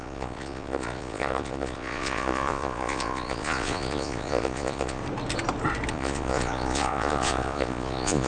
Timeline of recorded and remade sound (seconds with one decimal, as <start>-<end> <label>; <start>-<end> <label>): 0.0-5.0 remade; 5.0-5.9 recorded; 5.9-8.3 remade